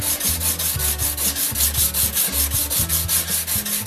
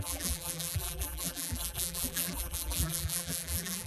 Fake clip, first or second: second